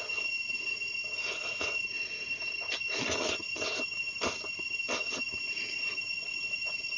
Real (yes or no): yes